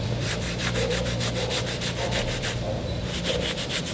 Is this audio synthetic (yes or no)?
yes